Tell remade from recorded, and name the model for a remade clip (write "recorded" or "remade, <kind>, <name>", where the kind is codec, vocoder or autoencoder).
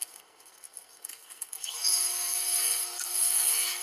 remade, codec, SNAC